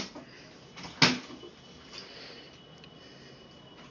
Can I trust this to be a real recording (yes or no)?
yes